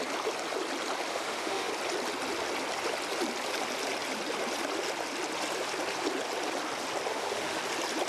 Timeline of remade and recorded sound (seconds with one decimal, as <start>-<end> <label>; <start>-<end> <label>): 0.0-1.1 recorded; 1.1-1.7 remade; 1.7-7.1 recorded; 7.1-7.6 remade; 7.6-8.1 recorded